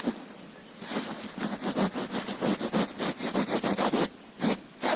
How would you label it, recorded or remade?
recorded